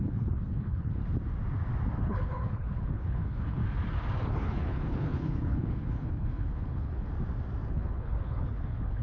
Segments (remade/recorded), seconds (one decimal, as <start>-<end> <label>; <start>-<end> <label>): 0.0-1.0 remade; 1.0-2.0 recorded; 2.0-3.6 remade; 3.6-4.3 recorded; 4.3-7.1 remade; 7.1-7.7 recorded; 7.7-9.0 remade